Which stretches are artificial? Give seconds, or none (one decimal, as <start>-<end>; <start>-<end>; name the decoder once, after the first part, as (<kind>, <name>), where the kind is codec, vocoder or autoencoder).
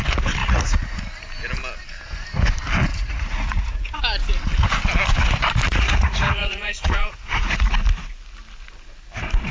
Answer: 0.4-1.0 (vocoder, Vocos); 2.9-4.0; 5.7-7.7